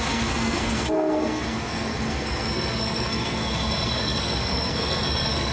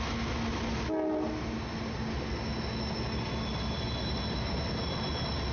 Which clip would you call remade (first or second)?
first